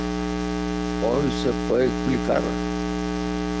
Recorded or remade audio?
recorded